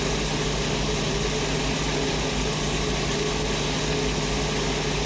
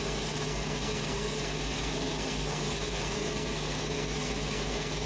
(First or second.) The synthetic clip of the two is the second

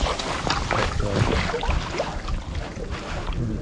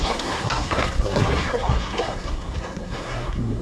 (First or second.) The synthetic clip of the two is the second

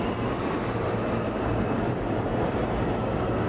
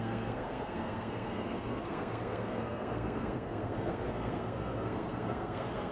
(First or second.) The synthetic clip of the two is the second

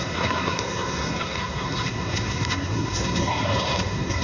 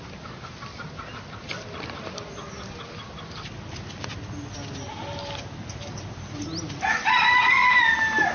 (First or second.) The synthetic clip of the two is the first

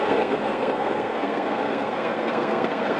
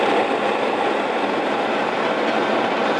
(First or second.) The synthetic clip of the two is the first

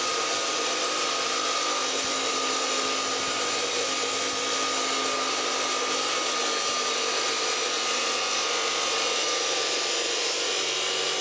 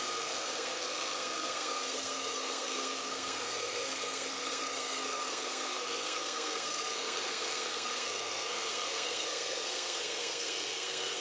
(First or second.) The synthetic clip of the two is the second